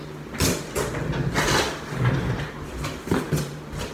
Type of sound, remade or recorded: recorded